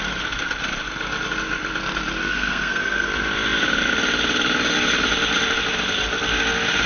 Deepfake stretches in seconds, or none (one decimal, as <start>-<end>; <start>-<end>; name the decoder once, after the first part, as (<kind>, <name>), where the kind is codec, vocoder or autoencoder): 2.3-3.1 (codec, SNAC)